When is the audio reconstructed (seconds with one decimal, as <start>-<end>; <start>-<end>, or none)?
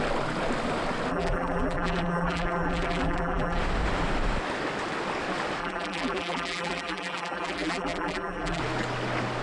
1.1-3.6; 5.6-8.6